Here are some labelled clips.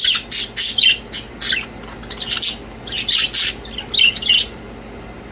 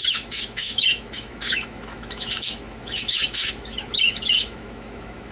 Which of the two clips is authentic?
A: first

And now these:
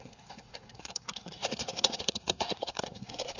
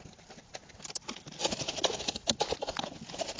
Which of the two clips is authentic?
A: second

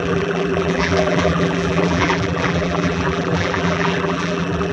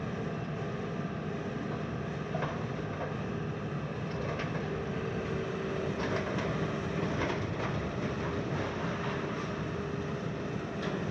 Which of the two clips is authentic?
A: second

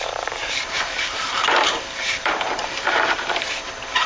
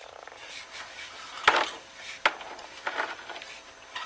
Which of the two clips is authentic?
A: second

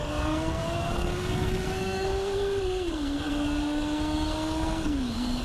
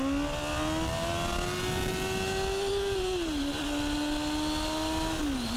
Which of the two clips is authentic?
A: second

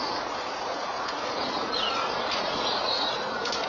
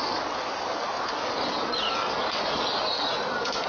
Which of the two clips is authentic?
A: second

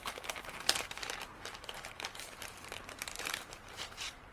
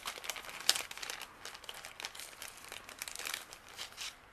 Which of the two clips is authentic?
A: second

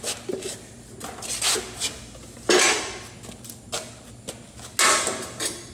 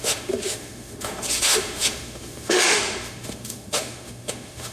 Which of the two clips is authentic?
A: first